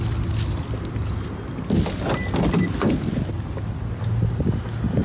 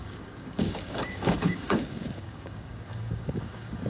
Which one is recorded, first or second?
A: first